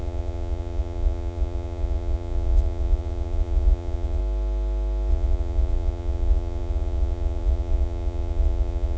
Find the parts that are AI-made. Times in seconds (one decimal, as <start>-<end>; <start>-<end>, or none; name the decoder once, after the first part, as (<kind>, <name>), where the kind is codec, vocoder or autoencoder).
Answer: 0.0-4.2 (vocoder, Vocos); 5.1-9.0